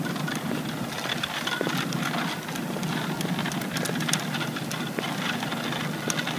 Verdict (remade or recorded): recorded